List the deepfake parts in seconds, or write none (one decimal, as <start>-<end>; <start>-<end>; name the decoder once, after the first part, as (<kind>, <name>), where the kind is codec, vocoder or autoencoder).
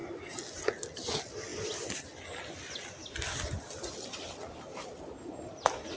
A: none